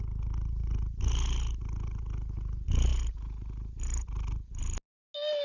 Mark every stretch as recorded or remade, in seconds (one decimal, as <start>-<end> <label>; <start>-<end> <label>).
0.0-5.4 recorded

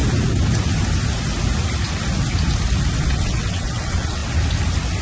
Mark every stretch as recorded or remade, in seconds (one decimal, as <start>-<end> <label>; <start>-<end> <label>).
0.0-3.0 recorded; 3.0-4.2 remade; 4.2-5.0 recorded